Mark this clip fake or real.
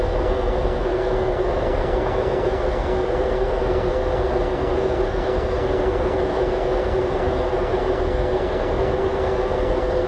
fake